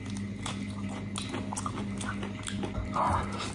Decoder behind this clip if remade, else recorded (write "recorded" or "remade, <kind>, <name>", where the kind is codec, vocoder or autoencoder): recorded